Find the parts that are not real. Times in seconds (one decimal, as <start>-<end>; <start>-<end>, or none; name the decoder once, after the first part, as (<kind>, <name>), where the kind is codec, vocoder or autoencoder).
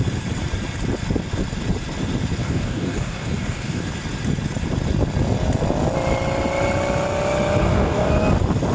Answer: 2.4-3.8 (codec, DAC); 7.6-8.1